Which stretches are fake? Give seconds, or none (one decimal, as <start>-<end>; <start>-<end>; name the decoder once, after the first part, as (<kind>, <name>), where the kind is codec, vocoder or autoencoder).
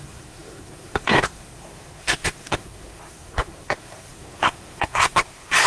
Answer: 0.0-5.7 (codec, SNAC)